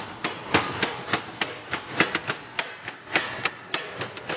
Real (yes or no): yes